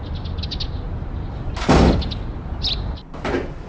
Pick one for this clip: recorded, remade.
recorded